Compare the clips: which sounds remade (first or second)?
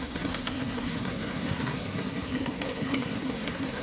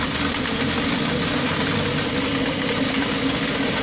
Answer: first